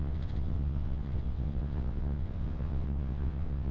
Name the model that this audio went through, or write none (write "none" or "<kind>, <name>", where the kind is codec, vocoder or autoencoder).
vocoder, WaveNeXt